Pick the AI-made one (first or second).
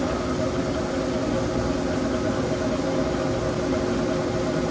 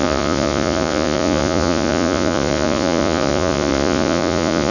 second